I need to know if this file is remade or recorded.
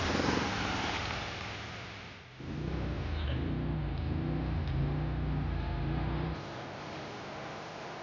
recorded